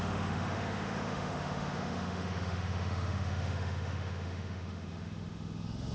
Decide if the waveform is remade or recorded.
remade